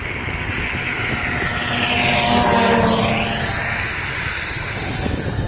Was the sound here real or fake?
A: real